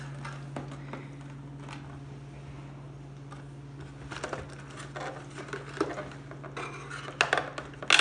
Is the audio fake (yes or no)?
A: no